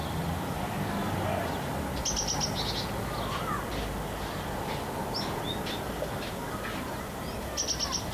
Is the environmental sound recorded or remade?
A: recorded